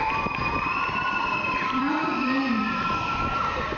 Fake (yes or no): yes